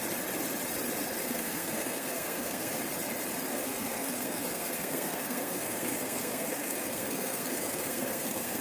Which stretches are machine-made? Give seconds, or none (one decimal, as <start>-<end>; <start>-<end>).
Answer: 1.2-2.8; 3.5-8.6